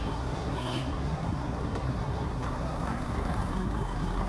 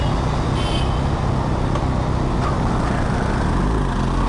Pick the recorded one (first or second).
second